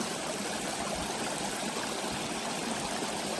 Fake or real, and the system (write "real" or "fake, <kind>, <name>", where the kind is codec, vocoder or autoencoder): fake, vocoder, BigVGAN v2